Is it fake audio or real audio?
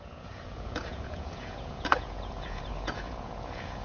fake